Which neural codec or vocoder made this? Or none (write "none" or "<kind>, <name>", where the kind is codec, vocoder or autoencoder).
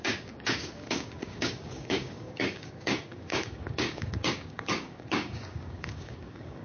codec, DAC